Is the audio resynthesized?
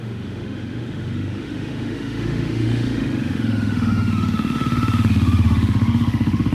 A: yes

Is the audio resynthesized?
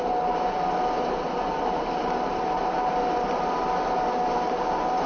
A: no